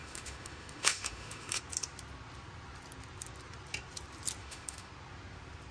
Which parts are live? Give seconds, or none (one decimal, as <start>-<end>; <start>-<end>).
1.6-4.4; 4.9-5.7